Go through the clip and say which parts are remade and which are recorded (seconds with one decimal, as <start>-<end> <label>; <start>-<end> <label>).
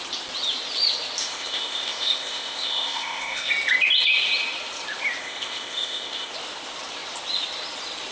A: 0.0-1.2 recorded; 1.2-3.5 remade; 3.5-5.2 recorded; 5.2-6.3 remade; 6.3-8.1 recorded